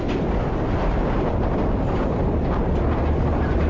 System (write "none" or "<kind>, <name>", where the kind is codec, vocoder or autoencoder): none